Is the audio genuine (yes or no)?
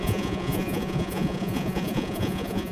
no